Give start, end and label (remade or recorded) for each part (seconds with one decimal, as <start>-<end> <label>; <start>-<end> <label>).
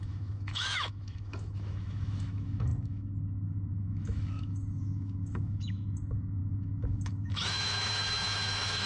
0.0-8.9 remade